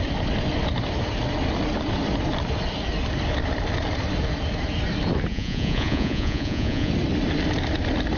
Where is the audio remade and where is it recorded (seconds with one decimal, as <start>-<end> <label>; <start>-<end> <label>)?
0.0-5.3 recorded; 5.3-6.9 remade; 6.9-8.2 recorded